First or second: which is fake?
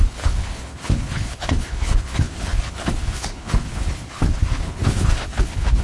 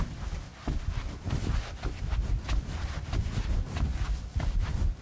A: first